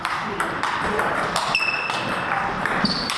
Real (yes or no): no